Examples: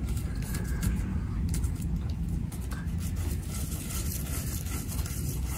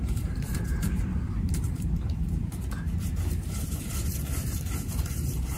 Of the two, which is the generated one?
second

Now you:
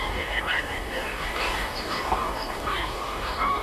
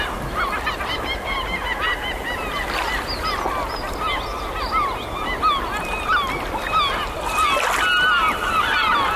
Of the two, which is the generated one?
first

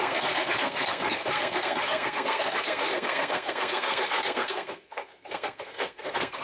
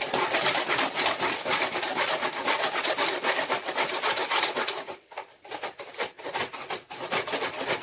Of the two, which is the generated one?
first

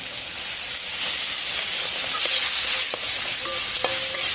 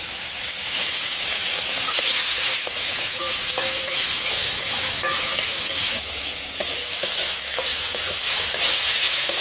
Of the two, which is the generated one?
second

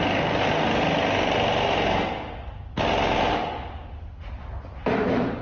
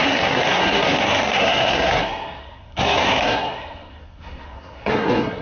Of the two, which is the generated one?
second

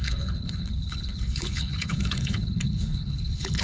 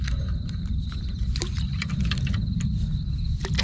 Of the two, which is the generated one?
first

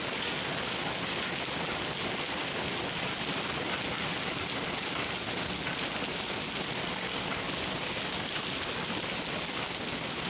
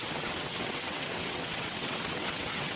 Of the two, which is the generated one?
second